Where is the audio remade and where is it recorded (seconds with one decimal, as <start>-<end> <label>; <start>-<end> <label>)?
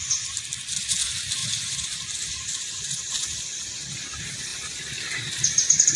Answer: 0.0-6.0 recorded